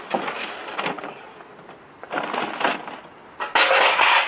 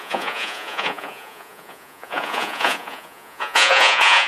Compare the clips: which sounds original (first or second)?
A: first